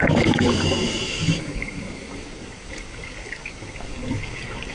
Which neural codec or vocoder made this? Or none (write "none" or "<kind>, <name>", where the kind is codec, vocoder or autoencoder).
codec, DAC